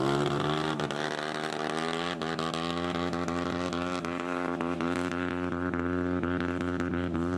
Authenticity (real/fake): real